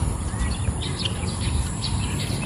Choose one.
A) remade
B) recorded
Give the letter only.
A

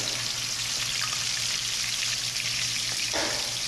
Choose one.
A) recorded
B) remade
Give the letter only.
A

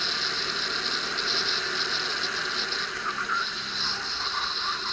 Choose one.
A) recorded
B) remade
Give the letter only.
A